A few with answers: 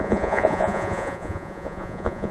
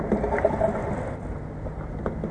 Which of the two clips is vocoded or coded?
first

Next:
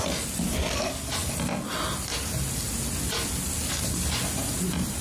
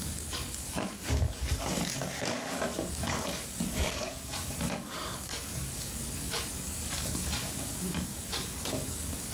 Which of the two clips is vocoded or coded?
second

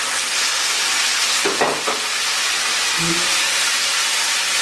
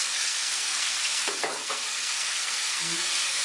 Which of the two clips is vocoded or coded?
second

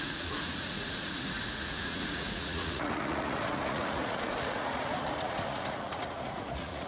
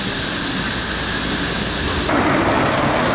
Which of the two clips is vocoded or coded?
first